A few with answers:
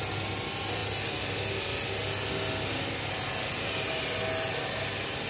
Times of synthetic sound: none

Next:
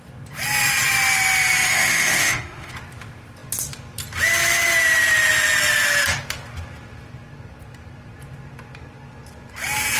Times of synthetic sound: 1.7-2.7 (autoencoder, DAC-VAE)

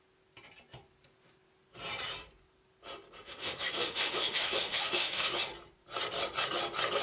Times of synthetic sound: 3.2-5.3 (autoencoder, DAC-VAE)

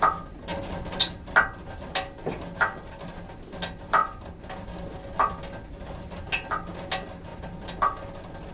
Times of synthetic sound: none

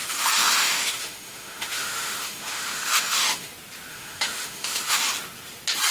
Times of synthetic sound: 0.0-3.5 (autoencoder, DAC-VAE); 3.9-5.0

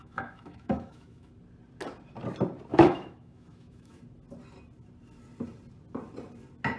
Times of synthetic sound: 0.0-1.3 (autoencoder, DAC-VAE); 2.7-4.0

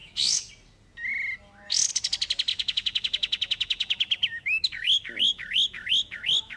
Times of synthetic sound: 0.0-0.5 (autoencoder, DAC-VAE); 2.5-6.6